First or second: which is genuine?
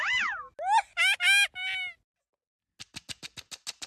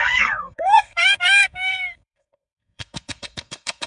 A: first